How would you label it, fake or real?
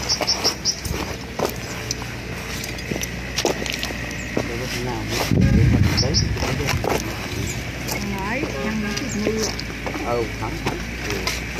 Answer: real